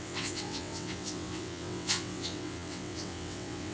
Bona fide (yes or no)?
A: no